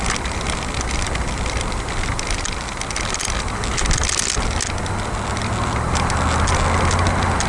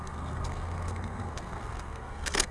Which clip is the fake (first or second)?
second